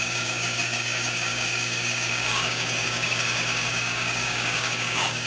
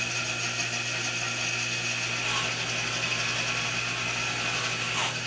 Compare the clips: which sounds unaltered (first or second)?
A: second